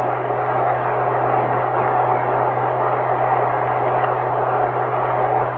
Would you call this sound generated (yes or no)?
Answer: no